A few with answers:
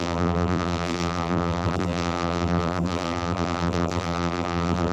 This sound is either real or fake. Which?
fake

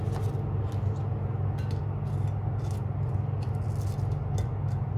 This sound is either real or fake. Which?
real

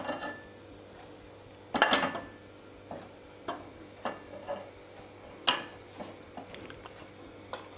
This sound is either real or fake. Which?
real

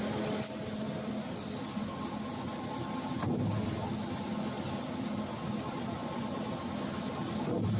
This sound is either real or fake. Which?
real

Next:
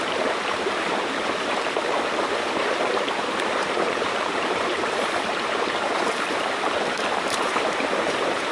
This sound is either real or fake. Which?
fake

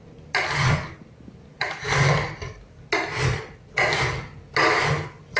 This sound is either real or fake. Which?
real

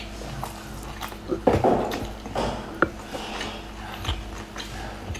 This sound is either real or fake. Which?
real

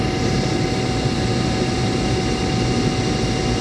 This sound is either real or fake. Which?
real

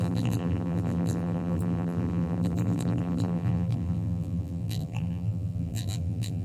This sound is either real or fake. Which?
fake